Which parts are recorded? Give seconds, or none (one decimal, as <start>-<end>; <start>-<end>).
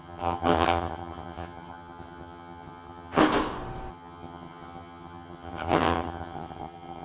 3.2-3.9